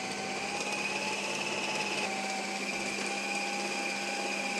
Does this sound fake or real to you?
real